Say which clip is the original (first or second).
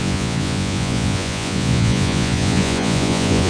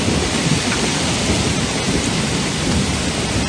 second